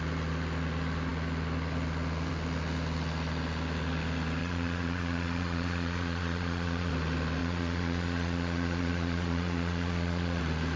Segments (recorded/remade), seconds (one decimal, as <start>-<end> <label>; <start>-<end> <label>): 0.0-4.4 recorded; 4.4-6.9 remade; 6.9-7.4 recorded; 7.4-10.4 remade; 10.4-10.8 recorded